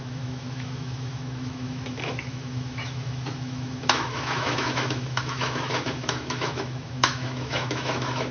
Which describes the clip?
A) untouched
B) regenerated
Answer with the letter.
B